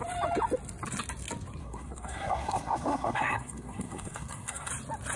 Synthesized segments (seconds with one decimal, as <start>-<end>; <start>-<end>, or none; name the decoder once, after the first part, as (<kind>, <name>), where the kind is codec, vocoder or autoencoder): 1.6-4.7 (codec, SNAC)